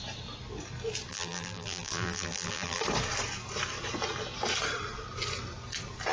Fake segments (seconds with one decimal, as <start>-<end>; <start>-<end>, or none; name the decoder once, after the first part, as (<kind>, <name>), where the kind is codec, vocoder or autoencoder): 1.1-2.8 (vocoder, BigVGAN v2)